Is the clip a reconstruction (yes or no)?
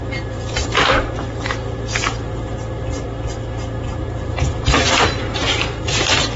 no